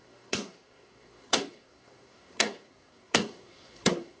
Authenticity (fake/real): fake